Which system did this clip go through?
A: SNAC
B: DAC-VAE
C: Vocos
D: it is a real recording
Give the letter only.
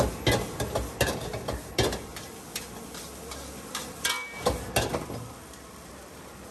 D